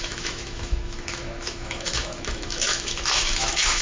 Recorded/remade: remade